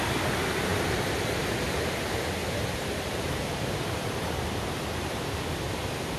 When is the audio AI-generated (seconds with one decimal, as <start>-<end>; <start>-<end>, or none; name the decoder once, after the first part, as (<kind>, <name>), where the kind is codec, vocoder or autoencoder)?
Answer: 2.4-4.7 (vocoder, BigVGAN v2)